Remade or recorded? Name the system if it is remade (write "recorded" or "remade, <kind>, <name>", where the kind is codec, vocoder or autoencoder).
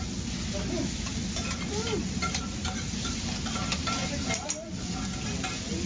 recorded